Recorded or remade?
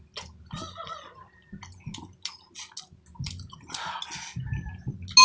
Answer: recorded